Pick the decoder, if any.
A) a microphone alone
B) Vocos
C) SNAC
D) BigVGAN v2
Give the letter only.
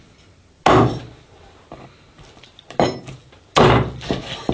A